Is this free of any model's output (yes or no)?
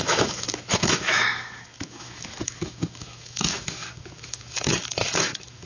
no